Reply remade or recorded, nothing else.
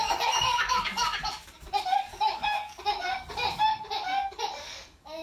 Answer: remade